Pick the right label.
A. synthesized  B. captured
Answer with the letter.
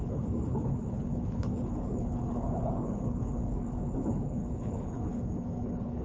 A